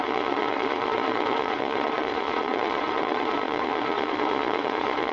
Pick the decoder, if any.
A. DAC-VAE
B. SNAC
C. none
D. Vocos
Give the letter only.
D